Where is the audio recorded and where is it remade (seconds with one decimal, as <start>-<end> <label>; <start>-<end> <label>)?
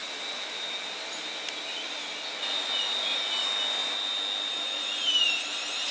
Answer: 0.0-5.9 recorded